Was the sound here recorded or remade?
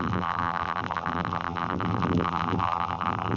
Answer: remade